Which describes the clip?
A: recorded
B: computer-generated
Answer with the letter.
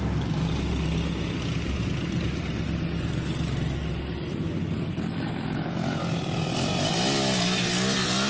A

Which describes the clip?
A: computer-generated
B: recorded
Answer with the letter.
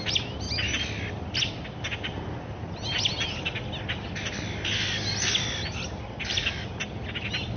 B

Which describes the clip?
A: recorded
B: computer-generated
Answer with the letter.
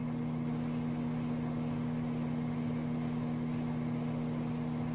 A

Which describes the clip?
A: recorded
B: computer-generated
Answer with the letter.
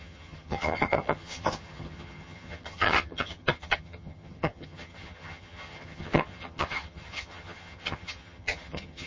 B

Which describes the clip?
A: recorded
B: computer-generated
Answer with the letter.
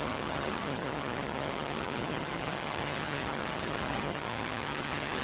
B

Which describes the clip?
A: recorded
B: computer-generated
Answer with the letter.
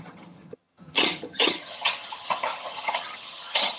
B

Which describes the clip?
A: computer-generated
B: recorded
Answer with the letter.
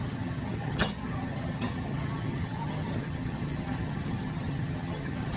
A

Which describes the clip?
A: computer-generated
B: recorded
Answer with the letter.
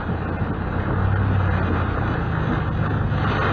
B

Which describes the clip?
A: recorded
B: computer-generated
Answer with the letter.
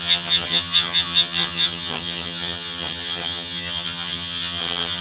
B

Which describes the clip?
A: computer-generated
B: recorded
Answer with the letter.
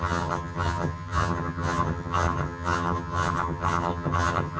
A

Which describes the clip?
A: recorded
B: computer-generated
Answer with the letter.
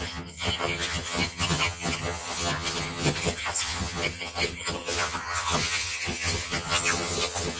B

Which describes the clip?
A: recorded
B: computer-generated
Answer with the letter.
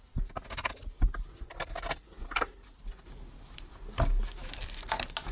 A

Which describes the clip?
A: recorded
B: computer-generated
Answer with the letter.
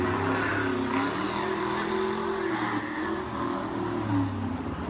A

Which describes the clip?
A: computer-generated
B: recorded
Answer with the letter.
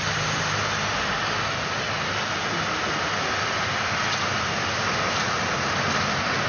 B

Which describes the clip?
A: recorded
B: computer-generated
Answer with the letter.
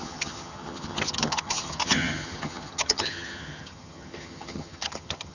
B